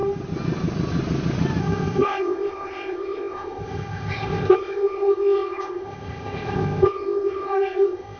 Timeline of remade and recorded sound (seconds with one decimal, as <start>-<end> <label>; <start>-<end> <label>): 0.0-1.6 recorded; 1.6-8.2 remade

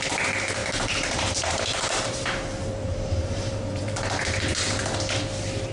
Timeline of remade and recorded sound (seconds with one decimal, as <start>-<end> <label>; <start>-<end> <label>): 0.0-0.6 recorded; 0.6-4.0 remade; 4.0-5.7 recorded

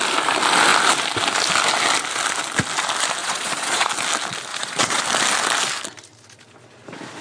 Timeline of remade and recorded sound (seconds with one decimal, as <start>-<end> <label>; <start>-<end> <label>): 0.0-3.2 recorded; 3.2-3.9 remade; 3.9-4.5 recorded; 4.5-5.0 remade; 5.0-7.2 recorded

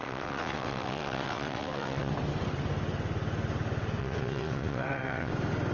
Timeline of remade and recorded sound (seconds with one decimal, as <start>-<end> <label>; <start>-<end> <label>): 0.0-2.1 remade; 2.1-4.0 recorded; 4.0-5.3 remade; 5.3-5.7 recorded

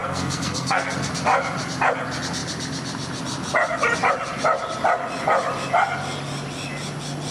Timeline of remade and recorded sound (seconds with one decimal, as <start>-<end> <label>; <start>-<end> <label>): 0.0-1.1 remade; 1.1-7.3 recorded